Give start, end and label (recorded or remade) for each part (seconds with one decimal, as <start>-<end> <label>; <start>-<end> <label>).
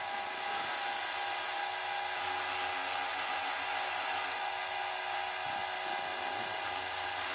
0.0-3.1 recorded; 3.1-4.5 remade; 4.5-7.3 recorded